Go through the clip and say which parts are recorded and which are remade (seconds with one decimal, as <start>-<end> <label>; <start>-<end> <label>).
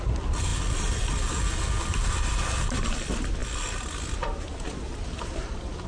0.0-5.9 recorded